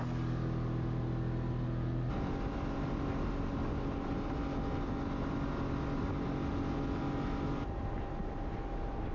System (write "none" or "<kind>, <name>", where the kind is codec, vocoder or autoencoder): none